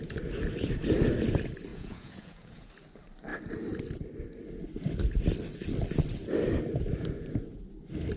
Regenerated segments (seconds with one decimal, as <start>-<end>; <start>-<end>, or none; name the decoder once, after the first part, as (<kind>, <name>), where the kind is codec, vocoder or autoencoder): 1.7-2.7 (vocoder, Vocos)